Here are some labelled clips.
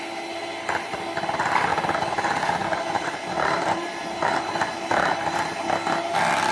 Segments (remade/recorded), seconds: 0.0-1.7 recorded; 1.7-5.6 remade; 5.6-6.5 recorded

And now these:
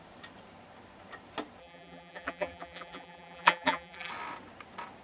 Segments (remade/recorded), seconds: 0.0-1.6 recorded; 1.6-4.1 remade; 4.1-5.0 recorded

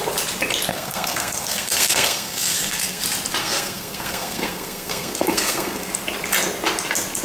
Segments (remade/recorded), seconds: 0.0-0.7 recorded; 0.7-3.0 remade; 3.0-3.4 recorded; 3.4-5.9 remade; 5.9-7.2 recorded

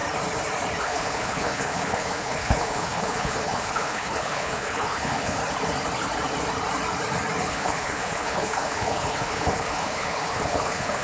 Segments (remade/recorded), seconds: 0.0-0.8 recorded; 0.8-5.4 remade; 5.4-7.5 recorded; 7.5-11.0 remade

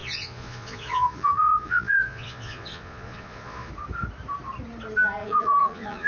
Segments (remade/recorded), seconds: 0.0-3.7 remade; 3.7-5.2 recorded; 5.2-6.1 remade

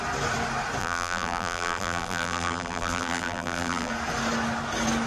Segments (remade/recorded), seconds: 0.0-0.8 recorded; 0.8-3.9 remade; 3.9-5.1 recorded